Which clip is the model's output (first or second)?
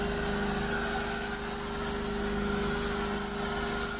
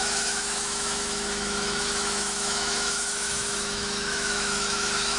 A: second